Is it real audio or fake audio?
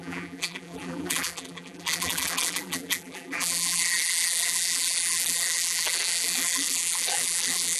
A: fake